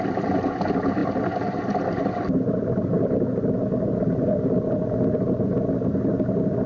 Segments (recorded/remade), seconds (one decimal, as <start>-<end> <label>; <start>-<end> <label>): 0.0-2.9 recorded; 2.9-5.5 remade; 5.5-6.7 recorded